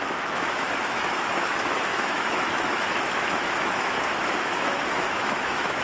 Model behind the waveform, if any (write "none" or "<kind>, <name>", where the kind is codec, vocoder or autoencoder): autoencoder, DAC-VAE